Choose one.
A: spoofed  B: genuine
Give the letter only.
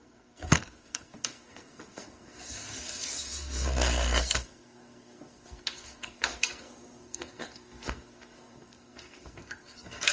A